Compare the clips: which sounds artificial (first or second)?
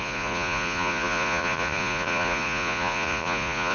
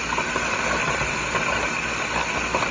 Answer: first